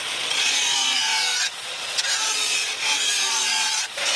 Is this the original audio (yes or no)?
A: no